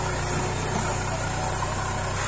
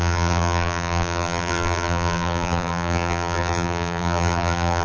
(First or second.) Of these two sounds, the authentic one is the first